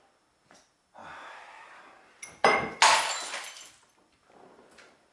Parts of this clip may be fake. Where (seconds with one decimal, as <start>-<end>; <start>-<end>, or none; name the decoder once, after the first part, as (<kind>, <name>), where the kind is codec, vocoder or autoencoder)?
1.0-1.8 (vocoder, BigVGAN v2)